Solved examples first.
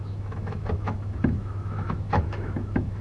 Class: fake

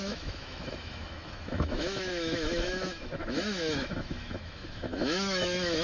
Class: fake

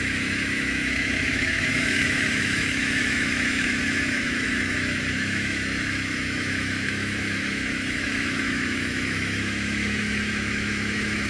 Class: fake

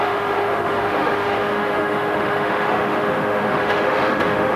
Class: fake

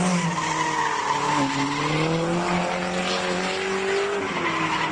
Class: real